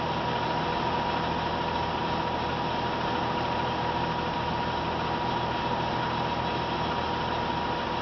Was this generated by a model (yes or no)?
no